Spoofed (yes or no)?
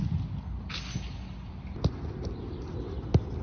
no